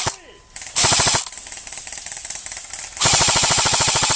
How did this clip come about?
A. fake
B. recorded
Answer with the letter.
B